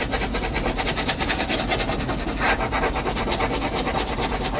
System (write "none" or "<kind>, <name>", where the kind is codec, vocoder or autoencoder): none